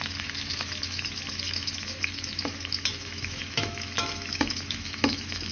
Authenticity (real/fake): fake